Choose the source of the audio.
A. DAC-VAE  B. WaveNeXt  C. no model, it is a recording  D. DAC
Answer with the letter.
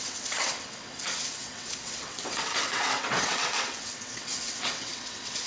B